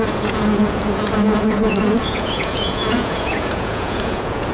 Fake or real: fake